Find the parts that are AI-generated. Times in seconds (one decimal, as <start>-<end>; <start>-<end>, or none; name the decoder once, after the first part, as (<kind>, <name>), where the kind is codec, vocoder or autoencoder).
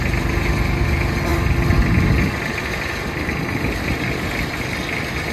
none